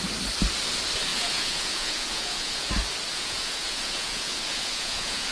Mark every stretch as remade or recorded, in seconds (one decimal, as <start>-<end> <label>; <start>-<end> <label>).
0.0-1.1 recorded; 1.1-2.7 remade; 2.7-3.1 recorded; 3.1-5.3 remade